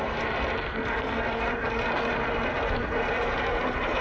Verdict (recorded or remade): recorded